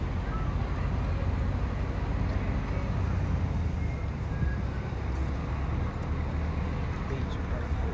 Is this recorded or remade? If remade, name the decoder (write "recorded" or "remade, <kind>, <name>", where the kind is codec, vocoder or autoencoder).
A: recorded